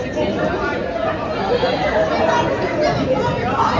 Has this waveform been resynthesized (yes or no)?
no